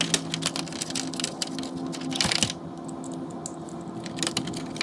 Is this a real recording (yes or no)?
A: yes